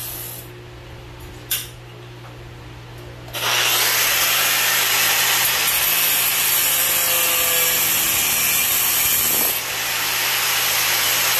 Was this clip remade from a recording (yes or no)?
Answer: no